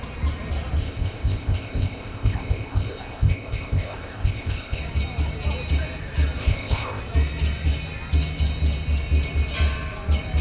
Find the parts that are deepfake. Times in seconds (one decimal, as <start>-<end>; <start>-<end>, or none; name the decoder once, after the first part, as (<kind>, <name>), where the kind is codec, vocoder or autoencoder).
0.8-4.8 (codec, ZipCodec); 6.4-7.0